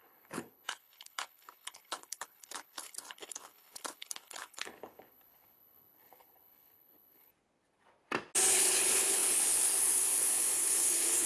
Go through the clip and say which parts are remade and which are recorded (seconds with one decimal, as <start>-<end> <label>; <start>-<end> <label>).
0.0-7.3 remade; 7.3-8.5 recorded; 8.5-11.3 remade